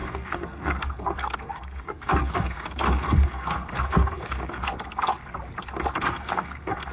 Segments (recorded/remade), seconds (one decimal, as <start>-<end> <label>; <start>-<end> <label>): 0.0-5.1 remade; 5.1-5.9 recorded; 5.9-6.9 remade